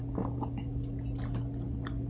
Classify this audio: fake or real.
real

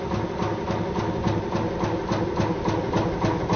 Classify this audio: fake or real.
real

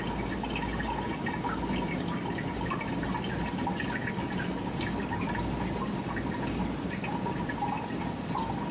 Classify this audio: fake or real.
real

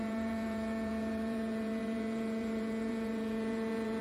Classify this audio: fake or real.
fake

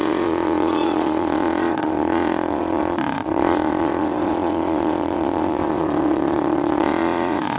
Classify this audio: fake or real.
fake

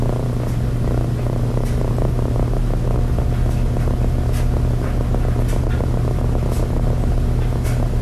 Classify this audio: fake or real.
real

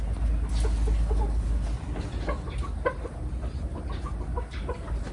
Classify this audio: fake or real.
real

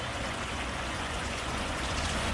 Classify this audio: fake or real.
fake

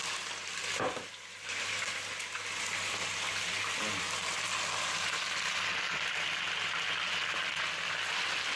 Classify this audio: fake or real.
real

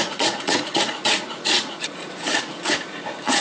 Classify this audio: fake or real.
fake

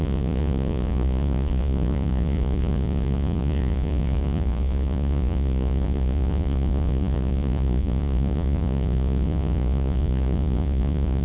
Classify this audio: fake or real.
fake